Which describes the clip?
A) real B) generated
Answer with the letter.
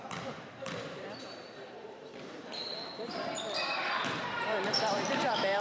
B